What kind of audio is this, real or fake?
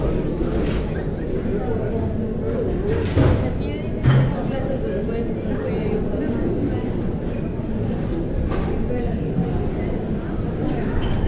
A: real